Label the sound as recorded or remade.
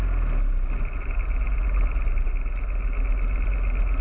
recorded